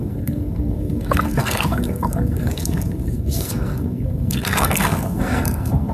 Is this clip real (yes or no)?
no